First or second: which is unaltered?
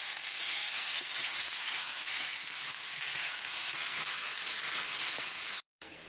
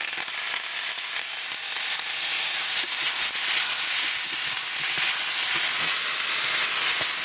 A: second